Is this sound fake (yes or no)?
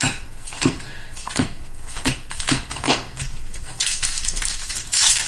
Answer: yes